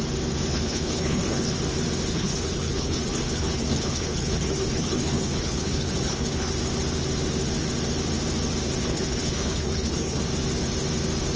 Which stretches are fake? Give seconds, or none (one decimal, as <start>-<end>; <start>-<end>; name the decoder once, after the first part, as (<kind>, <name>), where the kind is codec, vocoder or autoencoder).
0.5-1.5 (codec, HILCodec); 2.1-6.5; 8.8-10.2